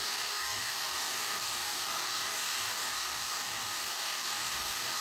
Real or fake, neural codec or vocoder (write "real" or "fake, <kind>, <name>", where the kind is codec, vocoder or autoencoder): fake, codec, DAC